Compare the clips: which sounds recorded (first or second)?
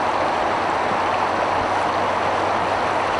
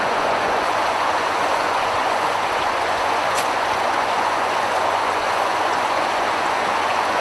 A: first